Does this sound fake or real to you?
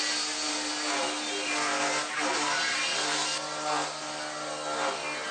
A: real